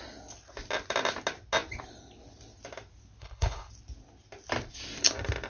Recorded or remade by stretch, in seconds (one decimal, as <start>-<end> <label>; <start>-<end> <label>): 0.0-3.2 recorded; 3.2-3.7 remade; 3.7-5.5 recorded